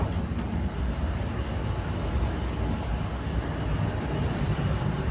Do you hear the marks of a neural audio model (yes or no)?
no